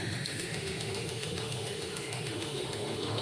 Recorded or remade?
remade